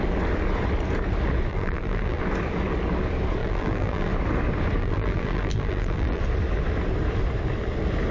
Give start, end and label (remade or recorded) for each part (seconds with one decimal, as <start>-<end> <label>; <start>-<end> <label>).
0.0-1.5 recorded; 1.5-2.2 remade; 2.2-3.4 recorded; 3.4-4.1 remade; 4.1-4.8 recorded; 4.8-6.2 remade; 6.2-8.1 recorded